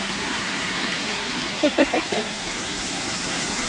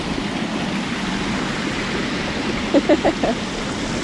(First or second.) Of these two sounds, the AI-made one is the first